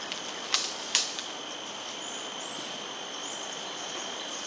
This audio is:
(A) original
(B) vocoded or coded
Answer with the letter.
A